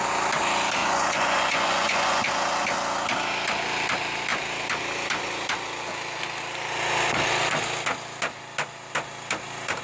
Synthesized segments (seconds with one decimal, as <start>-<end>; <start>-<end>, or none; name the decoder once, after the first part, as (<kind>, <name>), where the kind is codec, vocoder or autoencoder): 0.8-2.2 (vocoder, Vocos)